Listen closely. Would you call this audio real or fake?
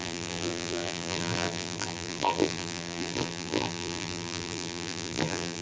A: fake